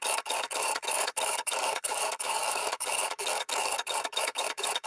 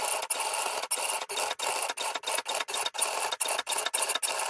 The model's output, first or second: first